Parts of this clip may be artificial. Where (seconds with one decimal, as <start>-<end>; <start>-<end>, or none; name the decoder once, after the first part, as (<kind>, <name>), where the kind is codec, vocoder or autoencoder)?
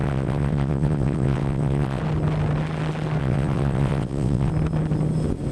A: 0.0-2.0 (vocoder, WaveNeXt); 3.2-4.5